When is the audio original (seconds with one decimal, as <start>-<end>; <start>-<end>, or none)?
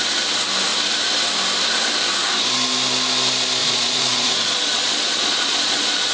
0.0-3.6